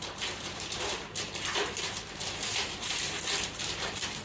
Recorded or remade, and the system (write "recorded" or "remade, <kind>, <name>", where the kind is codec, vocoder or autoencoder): remade, vocoder, BigVGAN v2